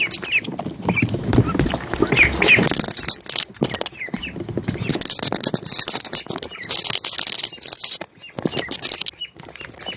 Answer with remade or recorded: recorded